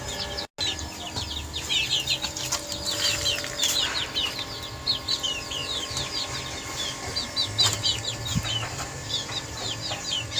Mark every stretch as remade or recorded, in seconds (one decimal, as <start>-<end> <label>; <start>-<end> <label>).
0.0-10.4 recorded